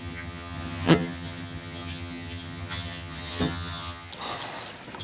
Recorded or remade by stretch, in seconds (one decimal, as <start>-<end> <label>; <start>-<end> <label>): 0.0-4.1 remade; 4.1-5.0 recorded